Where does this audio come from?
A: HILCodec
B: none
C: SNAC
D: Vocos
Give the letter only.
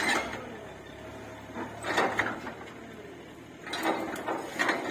B